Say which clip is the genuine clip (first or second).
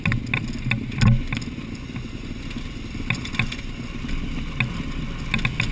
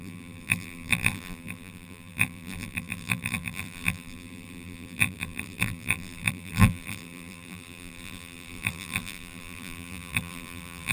first